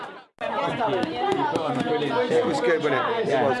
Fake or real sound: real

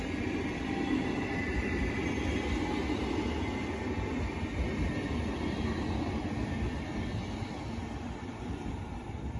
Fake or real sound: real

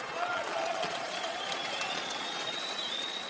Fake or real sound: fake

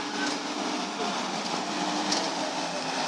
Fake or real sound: real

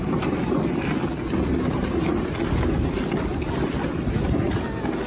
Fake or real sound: real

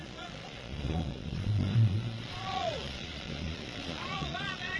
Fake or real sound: fake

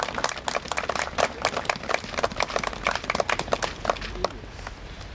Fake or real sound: real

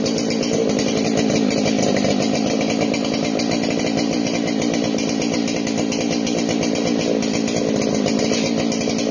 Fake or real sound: real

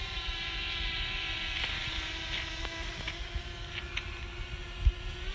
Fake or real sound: real